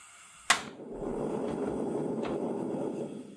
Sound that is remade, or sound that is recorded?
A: recorded